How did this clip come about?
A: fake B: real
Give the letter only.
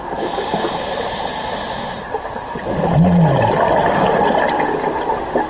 B